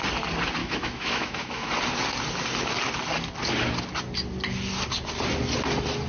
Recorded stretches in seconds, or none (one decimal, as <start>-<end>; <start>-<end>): 0.0-0.6; 1.7-6.1